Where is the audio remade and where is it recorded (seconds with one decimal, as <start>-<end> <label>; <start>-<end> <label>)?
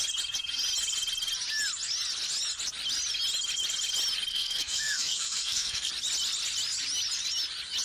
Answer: 0.0-4.3 recorded; 4.3-5.9 remade; 5.9-7.8 recorded